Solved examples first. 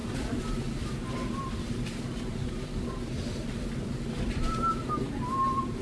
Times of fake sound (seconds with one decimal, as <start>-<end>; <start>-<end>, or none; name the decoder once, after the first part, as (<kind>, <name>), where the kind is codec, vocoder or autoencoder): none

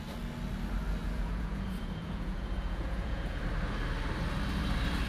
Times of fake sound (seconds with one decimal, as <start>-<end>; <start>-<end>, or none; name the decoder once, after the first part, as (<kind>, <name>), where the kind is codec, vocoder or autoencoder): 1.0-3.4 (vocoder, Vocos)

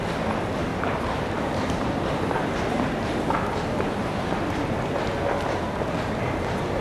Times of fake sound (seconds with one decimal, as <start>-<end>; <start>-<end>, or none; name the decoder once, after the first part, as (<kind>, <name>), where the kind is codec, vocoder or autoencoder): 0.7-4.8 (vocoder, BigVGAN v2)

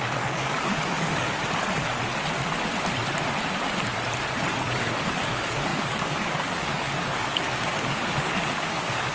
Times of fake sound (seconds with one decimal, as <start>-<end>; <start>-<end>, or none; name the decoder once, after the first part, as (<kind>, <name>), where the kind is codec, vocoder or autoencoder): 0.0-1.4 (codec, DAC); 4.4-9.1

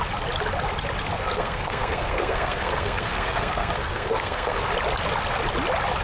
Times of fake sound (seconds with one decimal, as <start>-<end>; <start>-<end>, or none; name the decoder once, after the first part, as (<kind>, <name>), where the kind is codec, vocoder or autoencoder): 1.1-4.7 (codec, SNAC)

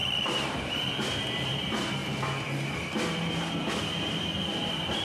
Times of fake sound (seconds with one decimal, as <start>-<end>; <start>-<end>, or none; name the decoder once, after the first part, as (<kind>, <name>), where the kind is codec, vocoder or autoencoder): 0.0-2.0 (vocoder, BigVGAN v2); 3.3-5.0